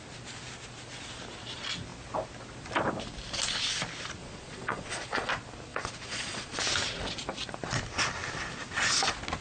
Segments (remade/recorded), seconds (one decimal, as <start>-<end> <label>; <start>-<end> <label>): 0.0-4.2 recorded; 4.2-5.3 remade; 5.3-5.7 recorded; 5.7-6.6 remade; 6.6-9.4 recorded